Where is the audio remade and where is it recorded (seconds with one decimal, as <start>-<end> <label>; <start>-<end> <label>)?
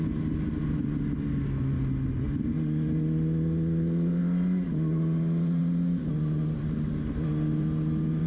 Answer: 0.0-8.3 recorded